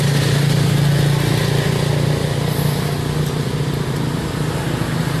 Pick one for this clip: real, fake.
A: real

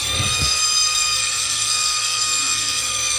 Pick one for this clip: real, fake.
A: fake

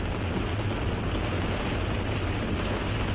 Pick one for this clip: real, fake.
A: real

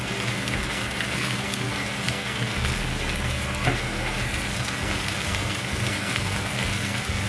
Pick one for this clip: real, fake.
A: fake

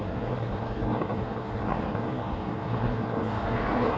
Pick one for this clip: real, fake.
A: fake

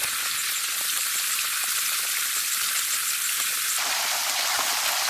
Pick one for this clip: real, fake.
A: real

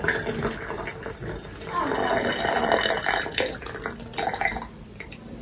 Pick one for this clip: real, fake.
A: real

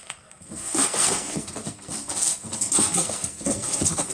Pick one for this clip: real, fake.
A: fake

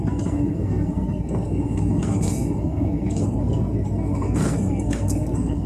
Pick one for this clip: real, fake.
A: fake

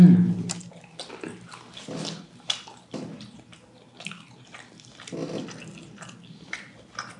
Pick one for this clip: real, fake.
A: real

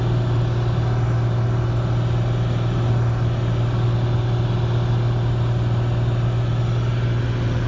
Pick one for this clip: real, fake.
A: real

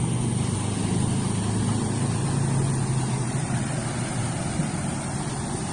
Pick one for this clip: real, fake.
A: real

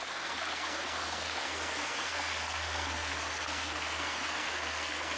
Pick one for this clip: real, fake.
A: fake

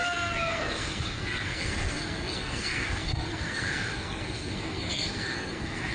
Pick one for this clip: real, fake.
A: fake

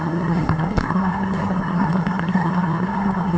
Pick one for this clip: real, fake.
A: fake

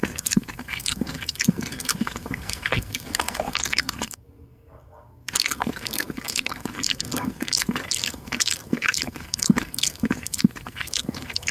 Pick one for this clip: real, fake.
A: fake